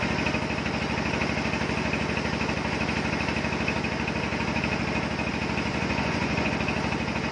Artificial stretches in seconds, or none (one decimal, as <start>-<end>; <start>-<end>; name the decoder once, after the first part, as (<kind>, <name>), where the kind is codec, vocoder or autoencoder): 5.7-6.5 (vocoder, Vocos)